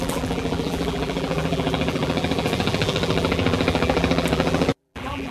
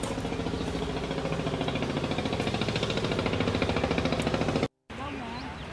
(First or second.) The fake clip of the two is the first